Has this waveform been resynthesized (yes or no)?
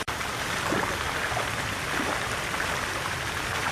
yes